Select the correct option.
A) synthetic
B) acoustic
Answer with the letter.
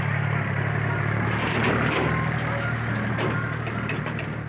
B